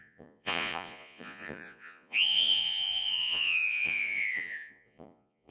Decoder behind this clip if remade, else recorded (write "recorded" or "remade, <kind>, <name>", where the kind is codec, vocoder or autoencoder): remade, vocoder, Vocos